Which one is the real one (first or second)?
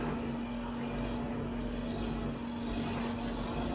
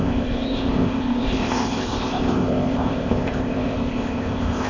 first